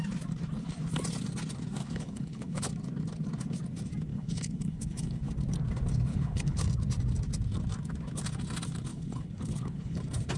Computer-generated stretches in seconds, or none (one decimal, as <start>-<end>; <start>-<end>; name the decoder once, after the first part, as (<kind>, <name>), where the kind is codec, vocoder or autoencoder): 1.8-2.7 (codec, HILCodec); 4.1-5.3; 6.1-6.6; 8.9-10.0